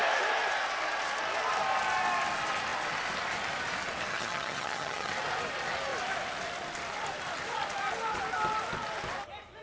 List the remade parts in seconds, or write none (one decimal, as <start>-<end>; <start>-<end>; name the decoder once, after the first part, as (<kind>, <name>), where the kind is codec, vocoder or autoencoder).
4.1-5.1 (vocoder, HiFi-GAN)